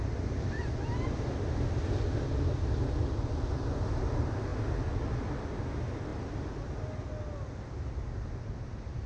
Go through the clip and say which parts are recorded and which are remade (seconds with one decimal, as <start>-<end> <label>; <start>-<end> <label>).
0.0-9.1 recorded